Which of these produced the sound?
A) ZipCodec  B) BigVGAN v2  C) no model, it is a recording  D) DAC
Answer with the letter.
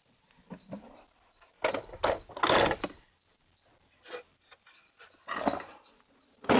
C